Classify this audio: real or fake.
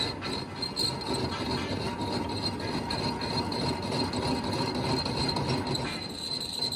real